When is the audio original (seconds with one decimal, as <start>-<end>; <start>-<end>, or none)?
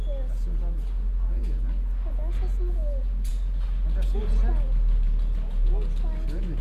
0.0-6.6